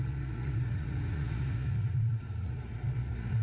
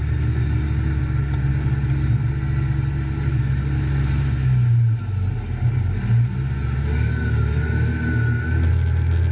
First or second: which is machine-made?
first